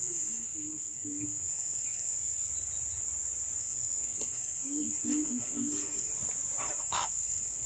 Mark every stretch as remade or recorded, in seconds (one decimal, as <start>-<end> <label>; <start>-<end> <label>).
0.0-2.5 remade; 2.5-3.6 recorded; 3.6-6.1 remade; 6.1-6.8 recorded; 6.8-7.7 remade